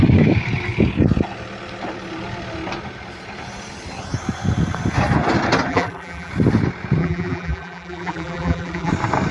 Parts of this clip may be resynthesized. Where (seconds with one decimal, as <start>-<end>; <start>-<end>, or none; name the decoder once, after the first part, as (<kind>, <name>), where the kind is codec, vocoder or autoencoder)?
5.7-6.3 (vocoder, BigVGAN v2); 7.0-8.9